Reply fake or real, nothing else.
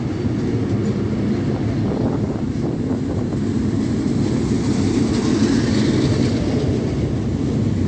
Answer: real